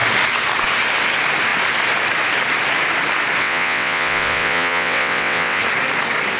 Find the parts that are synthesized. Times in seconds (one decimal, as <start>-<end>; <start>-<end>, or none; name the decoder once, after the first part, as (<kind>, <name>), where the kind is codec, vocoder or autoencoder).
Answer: 3.4-5.6 (vocoder, WaveNeXt)